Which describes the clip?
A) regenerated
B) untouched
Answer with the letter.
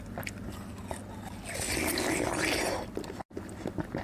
B